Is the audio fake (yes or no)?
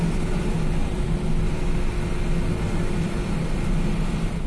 no